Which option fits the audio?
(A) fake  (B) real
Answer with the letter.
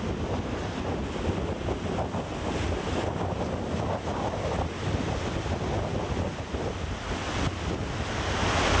B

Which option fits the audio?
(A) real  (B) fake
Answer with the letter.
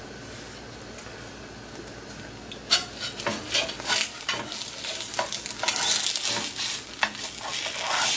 A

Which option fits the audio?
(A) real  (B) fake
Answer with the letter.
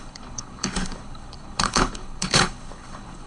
B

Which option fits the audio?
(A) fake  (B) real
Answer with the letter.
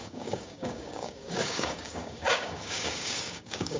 A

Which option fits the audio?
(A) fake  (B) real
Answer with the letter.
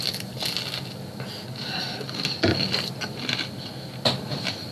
B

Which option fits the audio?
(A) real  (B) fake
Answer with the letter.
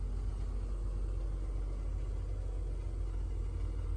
A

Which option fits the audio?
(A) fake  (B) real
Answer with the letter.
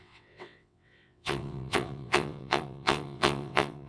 A